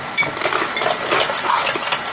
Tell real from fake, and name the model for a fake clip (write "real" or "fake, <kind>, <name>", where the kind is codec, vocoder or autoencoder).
real